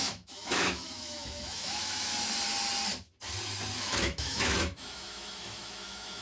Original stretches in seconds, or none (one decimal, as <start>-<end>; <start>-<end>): 2.1-3.8